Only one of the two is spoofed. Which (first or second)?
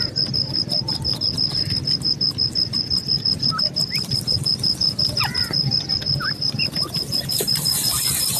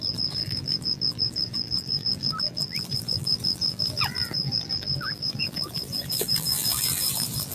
second